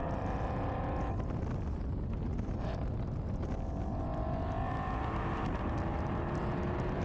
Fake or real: real